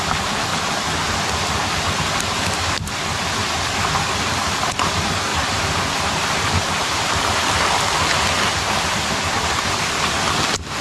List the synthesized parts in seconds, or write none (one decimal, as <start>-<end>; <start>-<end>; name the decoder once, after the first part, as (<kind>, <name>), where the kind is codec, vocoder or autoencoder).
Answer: none